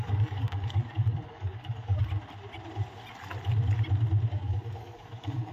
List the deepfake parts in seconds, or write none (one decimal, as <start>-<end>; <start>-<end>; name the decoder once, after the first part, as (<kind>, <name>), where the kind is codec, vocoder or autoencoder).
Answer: 0.0-2.0 (codec, DAC); 4.3-5.5